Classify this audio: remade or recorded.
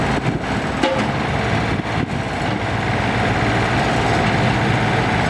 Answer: recorded